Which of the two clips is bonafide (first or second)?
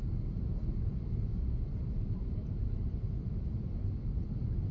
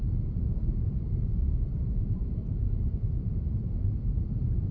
first